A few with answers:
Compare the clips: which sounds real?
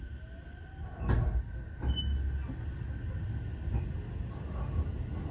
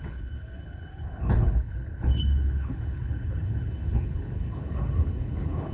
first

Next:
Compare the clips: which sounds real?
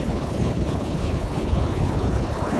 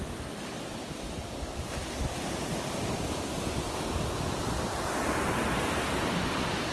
second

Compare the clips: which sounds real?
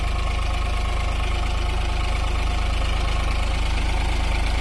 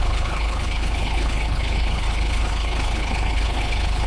first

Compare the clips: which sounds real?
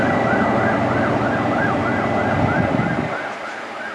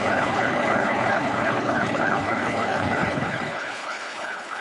first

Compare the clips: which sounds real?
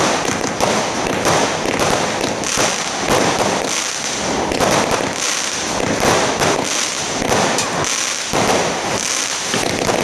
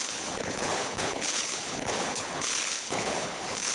first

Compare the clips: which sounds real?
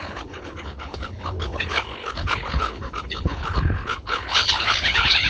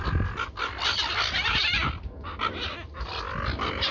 second